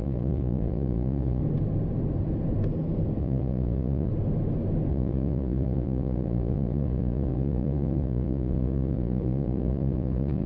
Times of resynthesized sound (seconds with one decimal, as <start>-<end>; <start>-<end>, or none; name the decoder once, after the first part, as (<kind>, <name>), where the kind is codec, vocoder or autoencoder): 0.0-1.4 (vocoder, Vocos); 3.2-4.1; 4.9-10.5

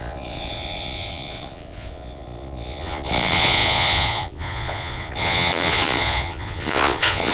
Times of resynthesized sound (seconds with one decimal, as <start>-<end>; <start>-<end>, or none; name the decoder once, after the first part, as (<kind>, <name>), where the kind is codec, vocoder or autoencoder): 0.0-7.3 (vocoder, Vocos)

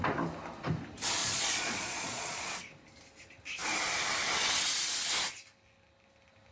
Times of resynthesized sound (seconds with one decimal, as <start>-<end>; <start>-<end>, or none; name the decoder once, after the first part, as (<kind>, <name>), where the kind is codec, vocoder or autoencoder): 1.2-2.5 (vocoder, Vocos)

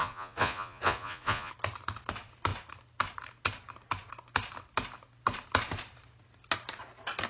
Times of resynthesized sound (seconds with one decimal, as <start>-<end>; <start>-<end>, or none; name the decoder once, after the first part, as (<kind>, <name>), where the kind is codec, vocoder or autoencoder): 0.0-1.5 (vocoder, Vocos)

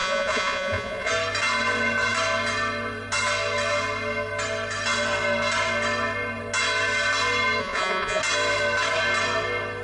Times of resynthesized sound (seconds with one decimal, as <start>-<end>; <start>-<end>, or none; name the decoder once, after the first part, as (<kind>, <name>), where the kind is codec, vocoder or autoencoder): 0.0-1.1 (vocoder, Vocos); 7.6-8.2

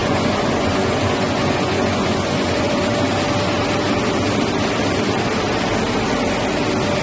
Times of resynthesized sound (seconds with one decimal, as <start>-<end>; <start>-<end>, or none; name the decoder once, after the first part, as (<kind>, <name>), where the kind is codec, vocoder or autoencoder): 0.0-2.8 (vocoder, Vocos)

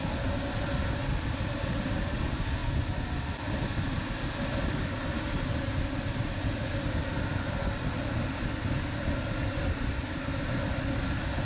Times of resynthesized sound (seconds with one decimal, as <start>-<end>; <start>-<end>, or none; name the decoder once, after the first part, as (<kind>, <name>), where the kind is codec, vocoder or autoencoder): none

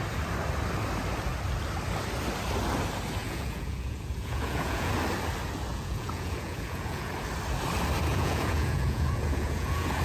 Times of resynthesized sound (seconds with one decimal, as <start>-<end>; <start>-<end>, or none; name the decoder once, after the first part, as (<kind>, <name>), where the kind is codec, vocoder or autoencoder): 3.2-4.9 (vocoder, Vocos); 5.7-7.1; 8.1-10.0